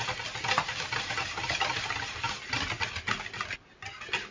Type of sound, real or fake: real